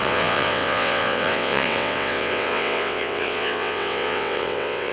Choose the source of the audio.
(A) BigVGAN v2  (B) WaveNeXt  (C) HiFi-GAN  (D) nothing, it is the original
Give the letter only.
B